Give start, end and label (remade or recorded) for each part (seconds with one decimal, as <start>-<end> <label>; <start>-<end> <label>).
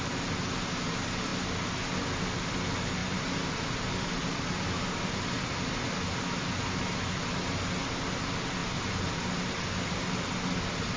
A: 0.0-3.0 recorded; 3.0-5.5 remade; 5.5-11.0 recorded